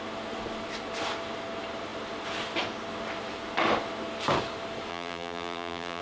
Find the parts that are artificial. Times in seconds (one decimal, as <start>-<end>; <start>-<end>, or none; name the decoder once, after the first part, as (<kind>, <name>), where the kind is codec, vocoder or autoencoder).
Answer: 4.9-6.0 (vocoder, BigVGAN v2)